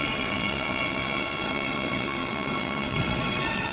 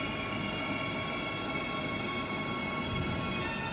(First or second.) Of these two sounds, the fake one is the first